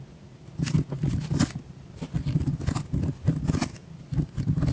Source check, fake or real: real